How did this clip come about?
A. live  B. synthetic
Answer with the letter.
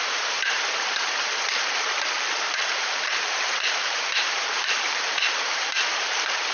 B